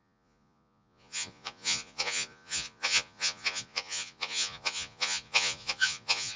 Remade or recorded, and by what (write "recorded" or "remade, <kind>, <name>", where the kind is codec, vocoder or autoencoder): remade, vocoder, Vocos